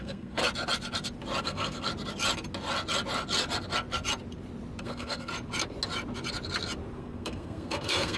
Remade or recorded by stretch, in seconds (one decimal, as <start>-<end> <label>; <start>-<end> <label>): 0.0-0.4 remade; 0.4-1.4 recorded; 1.4-1.9 remade; 1.9-4.8 recorded; 4.8-5.3 remade; 5.3-7.0 recorded; 7.0-8.2 remade

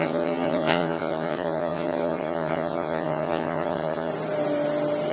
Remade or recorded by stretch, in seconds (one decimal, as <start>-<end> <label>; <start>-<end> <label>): 0.0-4.1 remade; 4.1-5.1 recorded

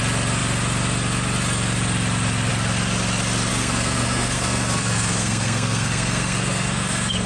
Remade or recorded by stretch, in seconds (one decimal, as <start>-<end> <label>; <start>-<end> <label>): 0.0-3.5 recorded; 3.5-7.3 remade

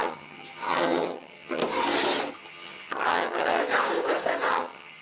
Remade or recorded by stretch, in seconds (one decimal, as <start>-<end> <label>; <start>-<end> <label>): 0.0-1.6 remade; 1.6-2.3 recorded; 2.3-3.6 remade; 3.6-4.5 recorded; 4.5-5.0 remade

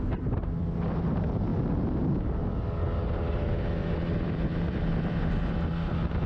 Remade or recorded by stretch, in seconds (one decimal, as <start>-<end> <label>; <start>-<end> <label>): 0.0-3.8 recorded; 3.8-5.4 remade; 5.4-6.3 recorded

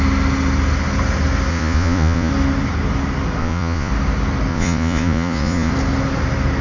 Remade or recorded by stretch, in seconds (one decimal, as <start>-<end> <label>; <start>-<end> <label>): 0.0-1.5 recorded; 1.5-2.3 remade; 2.3-3.4 recorded; 3.4-3.9 remade; 3.9-4.5 recorded; 4.5-5.7 remade; 5.7-6.6 recorded